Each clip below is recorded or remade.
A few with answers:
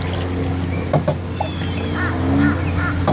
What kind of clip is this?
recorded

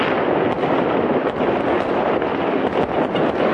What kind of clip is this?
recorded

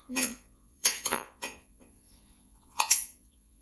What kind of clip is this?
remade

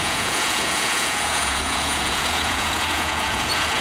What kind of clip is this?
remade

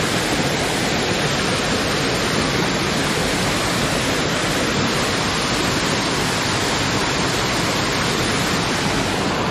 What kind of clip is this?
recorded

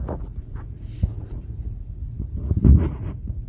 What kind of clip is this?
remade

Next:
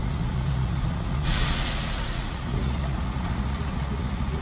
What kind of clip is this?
remade